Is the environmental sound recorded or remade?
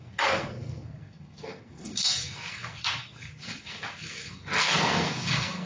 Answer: remade